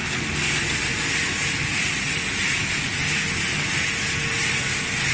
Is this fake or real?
real